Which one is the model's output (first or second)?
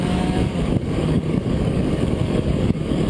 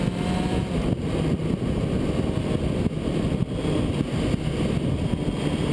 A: first